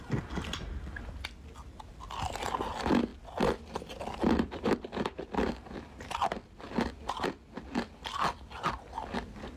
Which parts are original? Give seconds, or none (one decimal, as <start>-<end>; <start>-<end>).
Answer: 0.0-3.1; 6.7-9.6